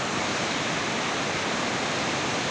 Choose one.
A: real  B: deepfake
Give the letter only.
A